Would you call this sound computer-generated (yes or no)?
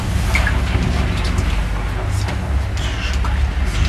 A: no